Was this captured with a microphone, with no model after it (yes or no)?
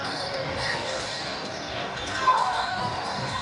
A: no